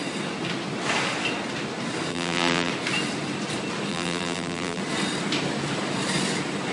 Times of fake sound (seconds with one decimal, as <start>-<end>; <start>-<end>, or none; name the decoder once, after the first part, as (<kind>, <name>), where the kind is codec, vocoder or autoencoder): 2.1-2.7 (vocoder, BigVGAN v2); 3.9-4.8